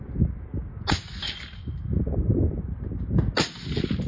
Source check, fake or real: real